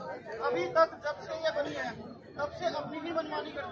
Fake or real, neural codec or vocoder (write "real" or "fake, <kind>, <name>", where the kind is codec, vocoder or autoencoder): real